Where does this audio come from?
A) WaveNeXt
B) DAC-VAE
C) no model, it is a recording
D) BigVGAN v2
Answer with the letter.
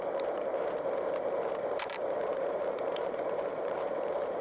D